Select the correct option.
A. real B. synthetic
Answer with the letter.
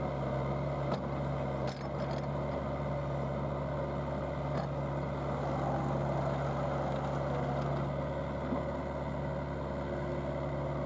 A